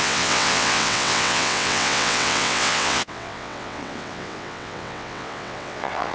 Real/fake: fake